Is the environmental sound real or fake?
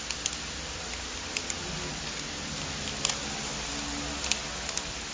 real